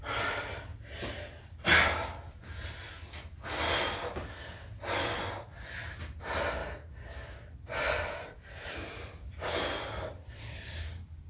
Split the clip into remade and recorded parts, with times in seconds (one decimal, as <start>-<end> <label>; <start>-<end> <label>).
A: 0.0-0.7 remade; 0.7-5.5 recorded; 5.5-6.6 remade; 6.6-8.0 recorded; 8.0-11.3 remade